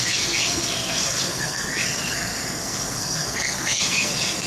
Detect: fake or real fake